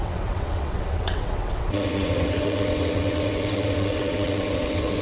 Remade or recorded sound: remade